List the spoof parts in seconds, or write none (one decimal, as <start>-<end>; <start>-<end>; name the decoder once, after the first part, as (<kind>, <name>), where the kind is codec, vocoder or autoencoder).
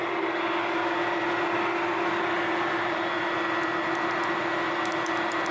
none